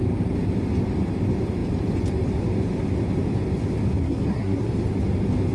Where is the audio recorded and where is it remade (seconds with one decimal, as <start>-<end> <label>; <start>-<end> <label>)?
0.0-4.0 recorded; 4.0-4.7 remade; 4.7-5.5 recorded

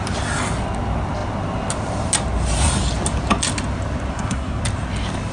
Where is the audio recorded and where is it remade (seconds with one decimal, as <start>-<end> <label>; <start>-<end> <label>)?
0.0-4.1 recorded; 4.1-4.6 remade; 4.6-5.3 recorded

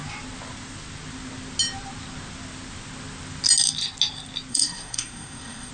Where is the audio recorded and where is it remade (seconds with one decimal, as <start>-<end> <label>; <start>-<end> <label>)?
0.0-4.5 recorded; 4.5-5.7 remade

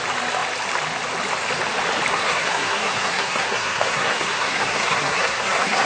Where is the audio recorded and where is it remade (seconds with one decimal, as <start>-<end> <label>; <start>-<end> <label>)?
0.0-2.1 recorded; 2.1-5.9 remade

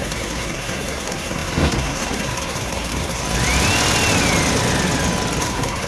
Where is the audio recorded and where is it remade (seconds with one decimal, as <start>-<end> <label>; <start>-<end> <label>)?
0.0-3.2 remade; 3.2-5.4 recorded; 5.4-5.9 remade

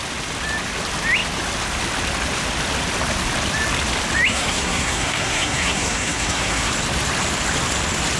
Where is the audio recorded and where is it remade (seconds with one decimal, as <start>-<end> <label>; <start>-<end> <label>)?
0.0-4.3 recorded; 4.3-6.7 remade; 6.7-8.2 recorded

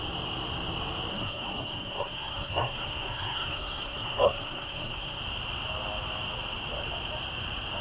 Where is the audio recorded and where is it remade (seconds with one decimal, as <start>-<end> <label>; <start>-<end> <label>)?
0.0-1.1 recorded; 1.1-5.2 remade; 5.2-7.8 recorded